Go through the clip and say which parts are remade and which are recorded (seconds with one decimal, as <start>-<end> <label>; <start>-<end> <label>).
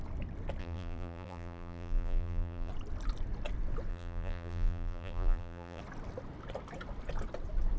0.0-0.6 recorded; 0.6-2.7 remade; 2.7-3.9 recorded; 3.9-5.8 remade; 5.8-7.8 recorded